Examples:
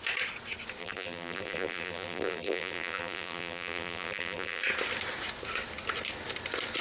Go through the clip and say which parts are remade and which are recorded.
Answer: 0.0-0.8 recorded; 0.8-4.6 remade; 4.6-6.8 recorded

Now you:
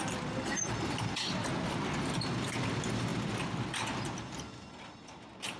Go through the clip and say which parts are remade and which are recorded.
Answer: 0.0-5.6 recorded